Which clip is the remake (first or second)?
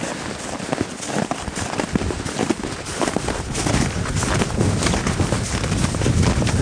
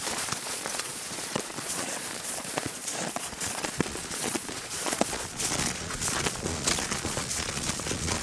second